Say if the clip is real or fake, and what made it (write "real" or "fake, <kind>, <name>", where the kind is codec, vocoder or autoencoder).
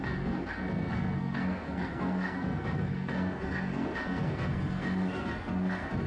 fake, codec, SNAC